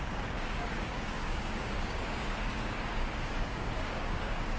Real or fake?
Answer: fake